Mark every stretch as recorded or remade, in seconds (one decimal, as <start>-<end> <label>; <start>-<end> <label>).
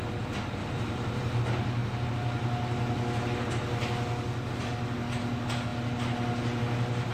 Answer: 0.0-0.6 recorded; 0.6-1.4 remade; 1.4-7.1 recorded